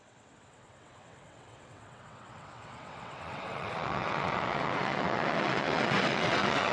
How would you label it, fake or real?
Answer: fake